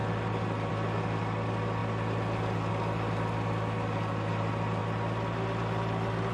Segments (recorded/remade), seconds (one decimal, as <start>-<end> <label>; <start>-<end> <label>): 0.0-6.3 recorded